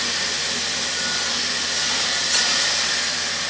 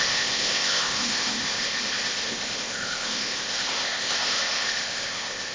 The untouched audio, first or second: first